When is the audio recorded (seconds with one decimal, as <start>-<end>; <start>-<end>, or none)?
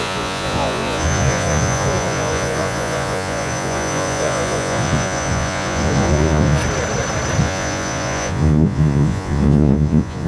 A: 6.6-7.4